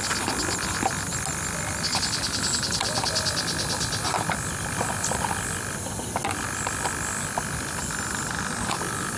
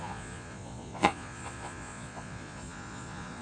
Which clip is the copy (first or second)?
second